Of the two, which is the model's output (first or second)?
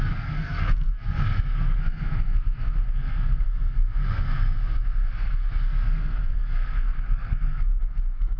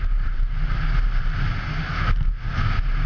first